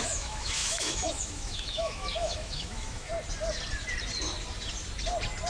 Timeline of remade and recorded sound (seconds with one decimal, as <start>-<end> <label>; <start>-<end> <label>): 0.0-3.1 remade; 3.1-5.5 recorded